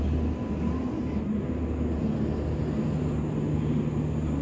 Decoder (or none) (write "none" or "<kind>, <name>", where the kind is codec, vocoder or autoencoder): none